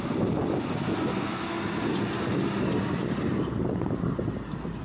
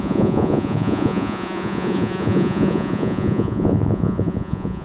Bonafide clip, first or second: first